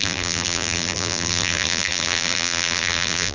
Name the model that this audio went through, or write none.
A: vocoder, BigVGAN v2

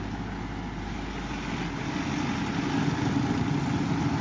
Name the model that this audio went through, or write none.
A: none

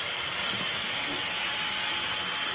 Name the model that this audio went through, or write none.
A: none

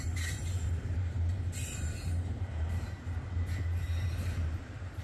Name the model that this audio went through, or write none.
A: vocoder, BigVGAN v2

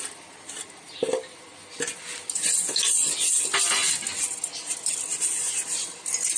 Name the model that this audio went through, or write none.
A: none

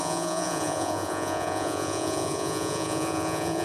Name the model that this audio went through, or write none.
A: vocoder, Vocos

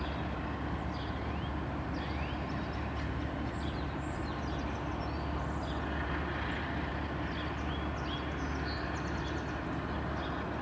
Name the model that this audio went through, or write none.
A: none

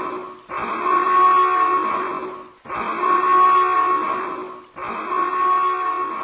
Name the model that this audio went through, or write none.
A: none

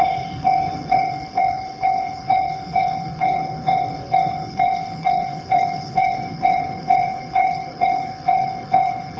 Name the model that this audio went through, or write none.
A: codec, HILCodec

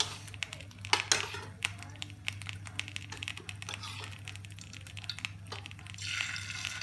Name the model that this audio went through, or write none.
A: none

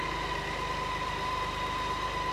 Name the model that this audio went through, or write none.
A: none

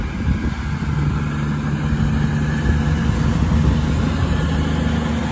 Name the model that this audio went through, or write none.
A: none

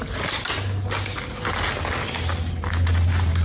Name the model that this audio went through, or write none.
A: none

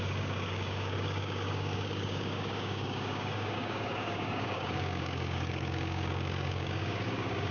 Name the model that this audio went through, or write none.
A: codec, DAC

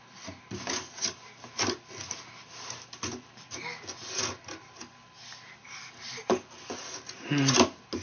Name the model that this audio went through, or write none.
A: none